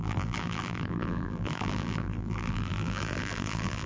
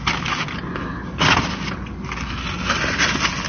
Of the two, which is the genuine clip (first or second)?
second